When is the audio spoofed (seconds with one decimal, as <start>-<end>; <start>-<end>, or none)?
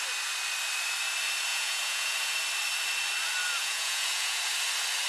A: 1.5-2.3; 3.6-4.4